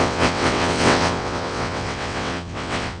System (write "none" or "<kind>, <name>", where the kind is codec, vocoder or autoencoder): vocoder, WaveNeXt